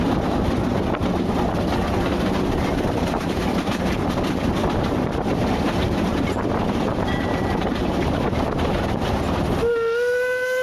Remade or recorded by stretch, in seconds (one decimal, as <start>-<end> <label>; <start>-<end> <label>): 0.0-1.8 recorded; 1.8-3.6 remade; 3.6-4.6 recorded; 4.6-9.0 remade; 9.0-10.6 recorded